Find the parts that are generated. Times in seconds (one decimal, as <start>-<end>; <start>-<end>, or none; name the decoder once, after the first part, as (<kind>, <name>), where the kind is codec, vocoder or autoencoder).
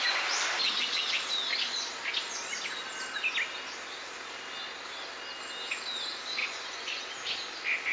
6.4-7.0 (vocoder, Vocos)